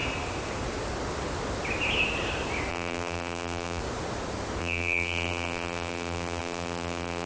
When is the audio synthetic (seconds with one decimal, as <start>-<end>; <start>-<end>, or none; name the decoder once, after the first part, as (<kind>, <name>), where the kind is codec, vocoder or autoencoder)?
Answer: 2.7-3.8 (vocoder, BigVGAN v2); 4.6-7.3